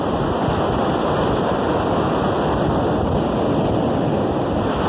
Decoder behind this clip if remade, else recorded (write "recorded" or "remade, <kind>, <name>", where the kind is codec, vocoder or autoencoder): recorded